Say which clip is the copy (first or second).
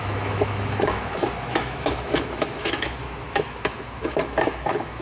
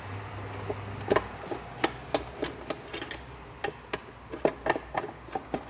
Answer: first